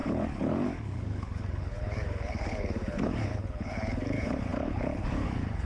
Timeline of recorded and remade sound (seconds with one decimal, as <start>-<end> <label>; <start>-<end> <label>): 0.0-5.7 remade